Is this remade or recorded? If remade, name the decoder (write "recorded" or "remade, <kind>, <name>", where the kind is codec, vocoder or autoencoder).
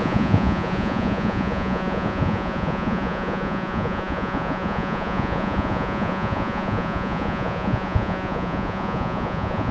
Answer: remade, vocoder, Vocos